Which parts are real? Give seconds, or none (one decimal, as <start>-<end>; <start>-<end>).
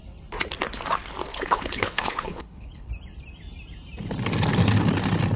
0.0-1.3; 2.9-5.4